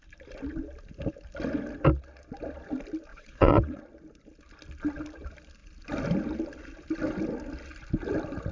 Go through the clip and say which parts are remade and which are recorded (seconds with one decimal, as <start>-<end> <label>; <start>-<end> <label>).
0.0-3.1 recorded; 3.1-3.8 remade; 3.8-8.5 recorded